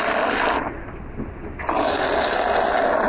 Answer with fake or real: real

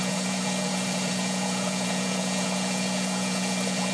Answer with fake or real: fake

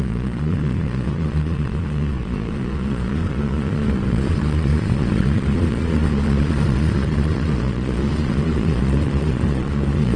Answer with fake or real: fake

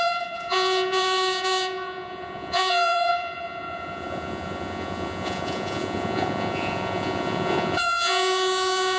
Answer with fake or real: fake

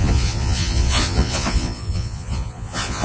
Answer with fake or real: fake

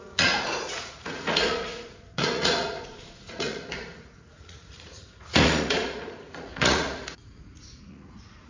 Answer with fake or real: fake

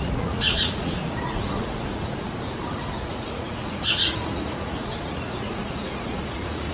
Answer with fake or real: fake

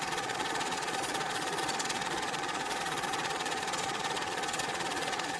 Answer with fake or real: fake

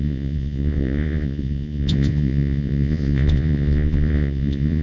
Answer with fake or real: fake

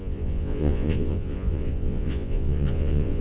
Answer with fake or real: fake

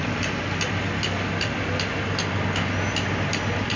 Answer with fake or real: real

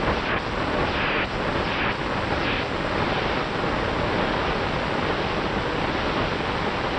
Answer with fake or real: real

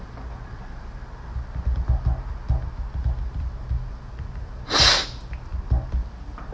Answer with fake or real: real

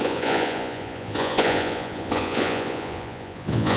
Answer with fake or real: fake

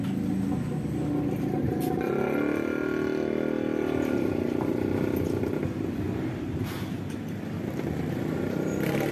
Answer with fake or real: real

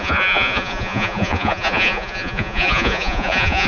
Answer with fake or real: fake